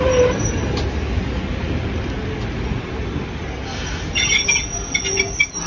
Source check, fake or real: real